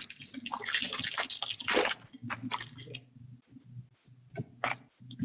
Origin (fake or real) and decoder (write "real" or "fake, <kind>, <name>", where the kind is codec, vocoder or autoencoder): real